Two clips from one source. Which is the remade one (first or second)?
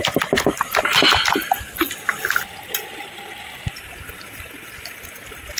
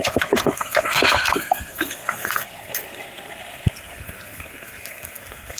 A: second